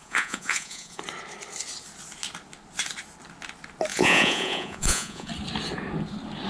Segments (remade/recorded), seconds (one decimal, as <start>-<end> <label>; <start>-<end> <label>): 0.0-1.0 remade; 1.0-3.9 recorded; 3.9-5.3 remade; 5.3-6.5 recorded